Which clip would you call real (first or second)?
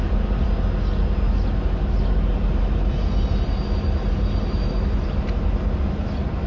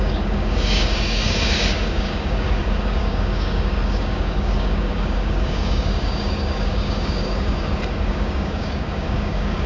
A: first